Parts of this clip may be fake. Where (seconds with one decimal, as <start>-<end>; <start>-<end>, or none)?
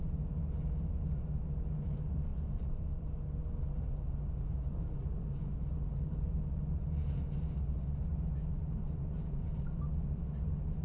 0.0-10.8